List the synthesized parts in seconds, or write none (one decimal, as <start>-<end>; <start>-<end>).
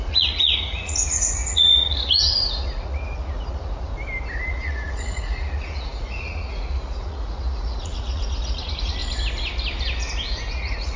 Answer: 0.0-3.9; 4.5-9.0; 10.5-11.0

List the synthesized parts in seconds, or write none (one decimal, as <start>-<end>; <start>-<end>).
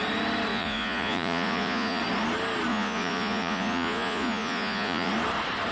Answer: 0.5-2.0; 2.7-5.1